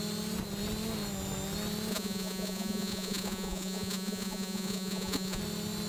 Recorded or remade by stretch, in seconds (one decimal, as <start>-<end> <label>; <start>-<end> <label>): 0.0-1.9 recorded; 1.9-5.4 remade; 5.4-5.9 recorded